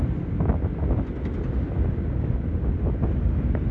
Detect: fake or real real